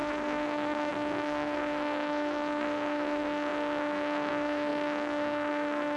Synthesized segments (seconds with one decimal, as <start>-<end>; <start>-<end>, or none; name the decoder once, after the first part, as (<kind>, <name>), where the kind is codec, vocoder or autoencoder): 0.0-6.0 (codec, SNAC)